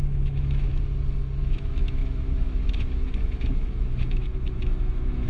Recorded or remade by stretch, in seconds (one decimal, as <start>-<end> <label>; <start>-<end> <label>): 0.0-0.7 remade; 0.7-1.4 recorded; 1.4-5.3 remade

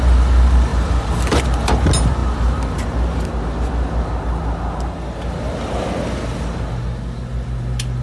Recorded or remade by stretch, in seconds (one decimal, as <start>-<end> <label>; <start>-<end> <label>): 0.0-0.7 recorded; 0.7-1.4 remade; 1.4-8.0 recorded

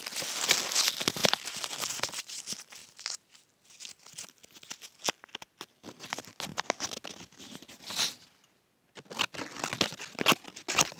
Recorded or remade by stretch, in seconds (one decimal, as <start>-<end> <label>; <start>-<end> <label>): 0.0-11.0 recorded

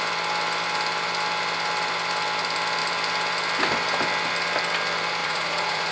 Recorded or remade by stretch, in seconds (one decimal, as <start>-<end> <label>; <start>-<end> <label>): 0.0-5.2 recorded; 5.2-5.9 remade